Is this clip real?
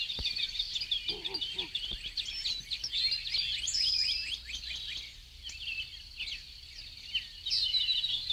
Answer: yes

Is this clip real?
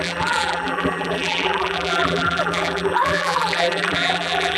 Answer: no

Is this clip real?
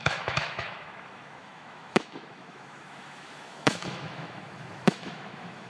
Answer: no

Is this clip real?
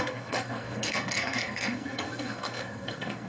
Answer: no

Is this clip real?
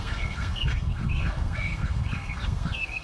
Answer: no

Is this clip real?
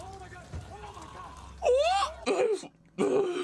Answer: yes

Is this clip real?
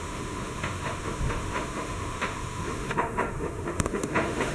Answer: no